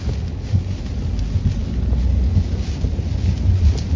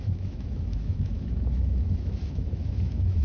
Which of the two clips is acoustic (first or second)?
first